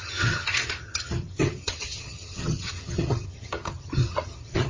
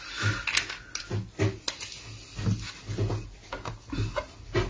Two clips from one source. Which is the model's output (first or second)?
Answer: first